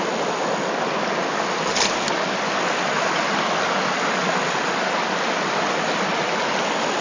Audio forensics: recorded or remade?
recorded